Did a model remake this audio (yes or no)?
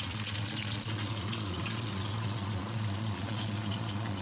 yes